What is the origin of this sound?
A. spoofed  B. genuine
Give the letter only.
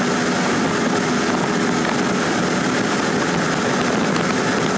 B